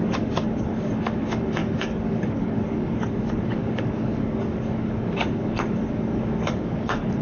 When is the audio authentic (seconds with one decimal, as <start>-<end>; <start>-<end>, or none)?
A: none